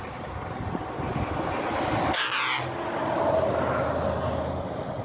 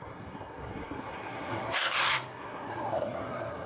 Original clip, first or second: first